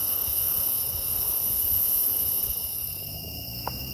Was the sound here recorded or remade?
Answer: remade